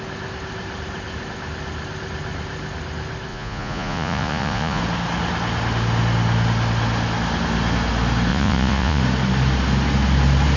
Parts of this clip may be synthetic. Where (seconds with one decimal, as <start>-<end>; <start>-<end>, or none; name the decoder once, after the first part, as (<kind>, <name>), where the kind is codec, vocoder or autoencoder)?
3.3-4.8 (vocoder, Vocos); 8.3-9.0